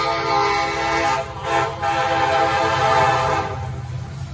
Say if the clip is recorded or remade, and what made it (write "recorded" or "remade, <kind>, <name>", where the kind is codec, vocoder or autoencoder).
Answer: recorded